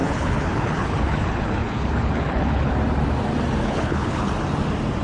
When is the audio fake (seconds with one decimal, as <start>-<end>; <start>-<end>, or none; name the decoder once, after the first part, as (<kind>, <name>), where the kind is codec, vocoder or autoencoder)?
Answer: 0.0-2.7 (codec, HILCodec); 3.6-4.3